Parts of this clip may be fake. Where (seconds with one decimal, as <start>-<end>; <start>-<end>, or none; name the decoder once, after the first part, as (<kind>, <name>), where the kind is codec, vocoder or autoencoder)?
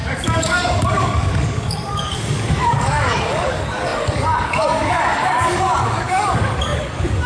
0.0-7.3 (codec, DAC)